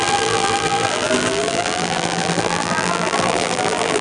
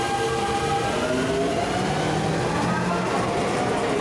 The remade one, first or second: first